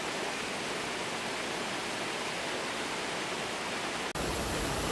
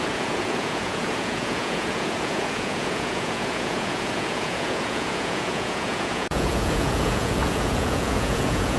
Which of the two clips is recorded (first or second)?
first